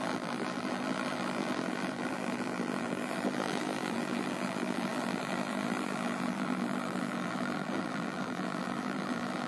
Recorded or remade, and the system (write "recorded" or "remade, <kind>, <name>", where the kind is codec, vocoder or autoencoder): remade, vocoder, BigVGAN v2